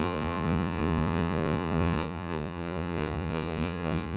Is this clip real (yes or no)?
no